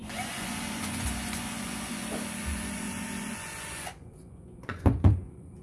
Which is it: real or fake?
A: fake